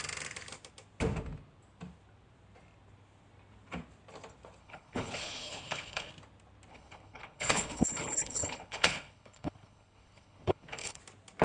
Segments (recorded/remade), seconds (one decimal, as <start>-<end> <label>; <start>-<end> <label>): 0.0-4.6 recorded; 4.6-6.1 remade; 6.1-6.7 recorded; 6.7-11.0 remade; 11.0-11.4 recorded